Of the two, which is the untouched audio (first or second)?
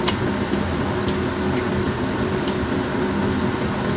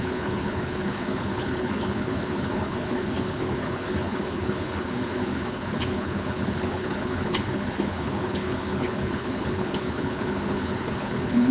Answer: first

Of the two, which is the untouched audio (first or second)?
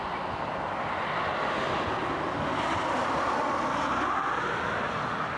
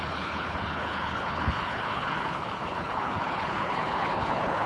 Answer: first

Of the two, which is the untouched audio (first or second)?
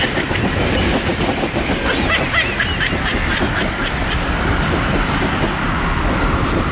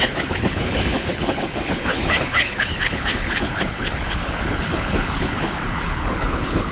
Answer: first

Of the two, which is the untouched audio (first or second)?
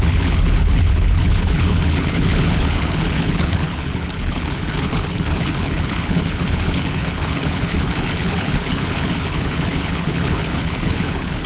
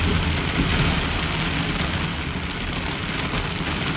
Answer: second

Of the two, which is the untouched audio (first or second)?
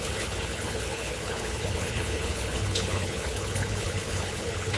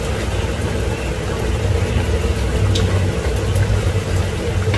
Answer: second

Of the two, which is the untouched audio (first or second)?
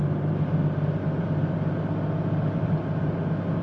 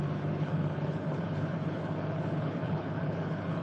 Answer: first